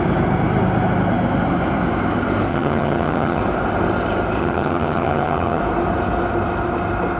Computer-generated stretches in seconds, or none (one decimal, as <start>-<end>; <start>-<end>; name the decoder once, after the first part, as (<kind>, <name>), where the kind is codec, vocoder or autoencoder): 2.5-3.4 (vocoder, HiFi-GAN); 4.4-5.6